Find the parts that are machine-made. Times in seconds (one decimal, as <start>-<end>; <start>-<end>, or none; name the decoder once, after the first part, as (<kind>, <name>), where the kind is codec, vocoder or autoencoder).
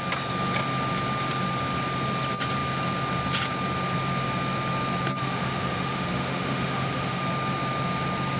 5.2-7.2 (autoencoder, DAC-VAE)